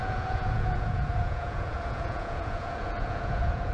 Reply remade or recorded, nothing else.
remade